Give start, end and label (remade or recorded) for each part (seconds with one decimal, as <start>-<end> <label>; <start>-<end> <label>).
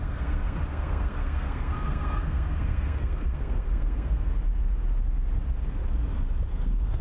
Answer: 0.0-4.3 remade; 4.3-6.5 recorded; 6.5-7.0 remade